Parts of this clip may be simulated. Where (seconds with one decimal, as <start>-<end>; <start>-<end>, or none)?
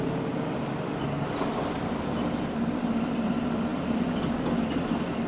0.0-5.3